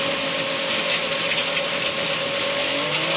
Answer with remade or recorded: recorded